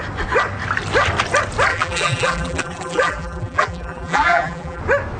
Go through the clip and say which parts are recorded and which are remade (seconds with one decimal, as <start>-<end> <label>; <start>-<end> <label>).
0.0-1.7 recorded; 1.7-4.8 remade; 4.8-5.2 recorded